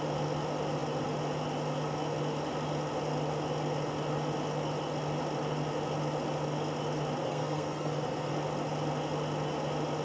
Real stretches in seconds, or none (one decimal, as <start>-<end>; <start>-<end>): 0.0-7.2; 8.3-10.0